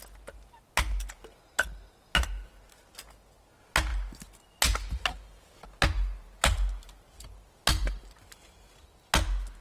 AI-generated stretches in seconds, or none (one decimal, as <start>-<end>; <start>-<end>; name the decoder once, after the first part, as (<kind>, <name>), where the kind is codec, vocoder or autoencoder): none